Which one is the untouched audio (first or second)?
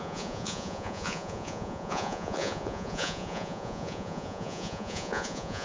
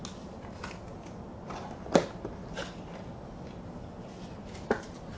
second